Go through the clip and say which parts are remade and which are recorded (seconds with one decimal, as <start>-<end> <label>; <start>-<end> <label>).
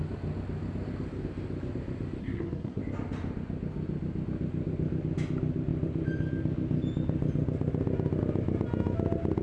0.0-2.2 recorded; 2.2-2.8 remade; 2.8-9.4 recorded